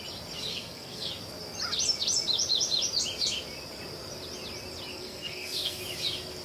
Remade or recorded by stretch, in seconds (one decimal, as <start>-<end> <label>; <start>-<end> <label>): 0.0-0.5 recorded; 0.5-1.1 remade; 1.1-4.9 recorded; 4.9-5.8 remade; 5.8-6.4 recorded